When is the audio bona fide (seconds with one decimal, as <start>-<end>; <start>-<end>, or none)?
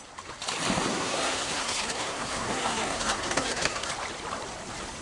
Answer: 0.0-0.9; 3.9-5.0